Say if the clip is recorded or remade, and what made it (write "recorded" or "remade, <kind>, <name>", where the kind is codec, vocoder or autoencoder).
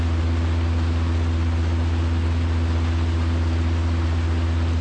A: recorded